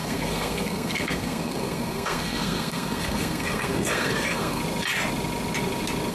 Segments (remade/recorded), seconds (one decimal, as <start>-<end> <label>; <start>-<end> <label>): 0.0-4.6 remade; 4.6-6.1 recorded